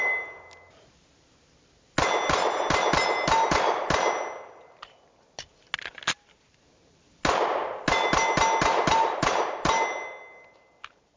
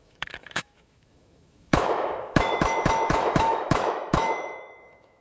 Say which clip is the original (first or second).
first